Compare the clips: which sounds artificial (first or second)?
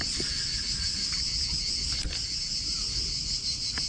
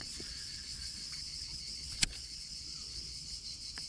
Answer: second